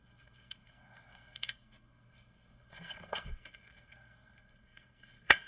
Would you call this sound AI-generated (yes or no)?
yes